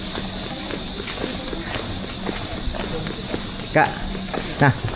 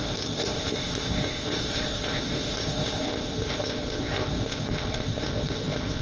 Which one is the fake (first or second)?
second